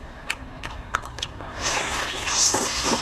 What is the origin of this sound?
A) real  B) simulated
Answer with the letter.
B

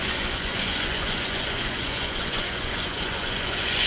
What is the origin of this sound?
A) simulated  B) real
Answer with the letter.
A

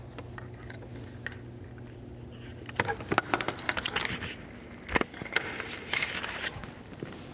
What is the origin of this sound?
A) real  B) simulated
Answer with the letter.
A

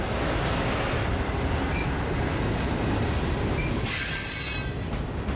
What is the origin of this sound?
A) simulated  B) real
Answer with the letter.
B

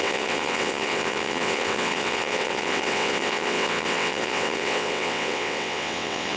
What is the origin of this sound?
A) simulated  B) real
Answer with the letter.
A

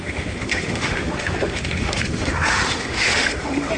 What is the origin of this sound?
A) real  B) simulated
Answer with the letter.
B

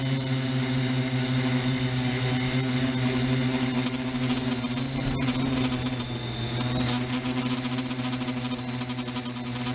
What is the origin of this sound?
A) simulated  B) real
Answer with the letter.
A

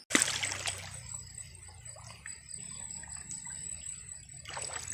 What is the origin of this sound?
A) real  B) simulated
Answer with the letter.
A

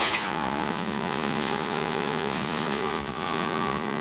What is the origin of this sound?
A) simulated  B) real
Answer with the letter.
A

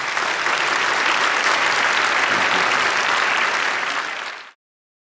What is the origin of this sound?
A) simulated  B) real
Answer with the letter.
B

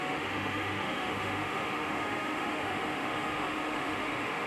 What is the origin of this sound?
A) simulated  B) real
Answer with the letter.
A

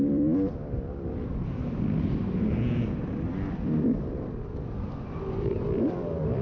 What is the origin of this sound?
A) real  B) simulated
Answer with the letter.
B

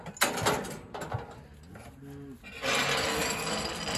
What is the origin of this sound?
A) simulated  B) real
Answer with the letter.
B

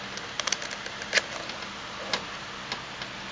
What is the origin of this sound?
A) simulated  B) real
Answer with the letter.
B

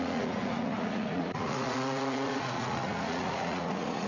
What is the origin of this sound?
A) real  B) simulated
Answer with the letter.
B